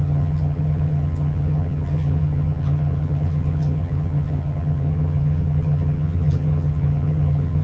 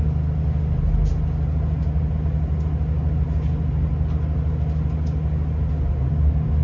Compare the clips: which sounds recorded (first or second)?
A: second